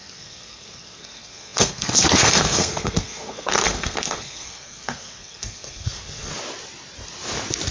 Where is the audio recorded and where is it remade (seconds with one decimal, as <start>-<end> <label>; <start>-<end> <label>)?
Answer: 0.0-6.3 remade; 6.3-7.7 recorded